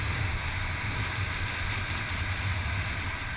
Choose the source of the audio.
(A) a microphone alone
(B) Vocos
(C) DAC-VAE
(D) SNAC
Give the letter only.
A